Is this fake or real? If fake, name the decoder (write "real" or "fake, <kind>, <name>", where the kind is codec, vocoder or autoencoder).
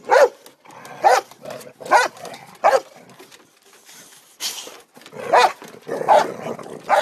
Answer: real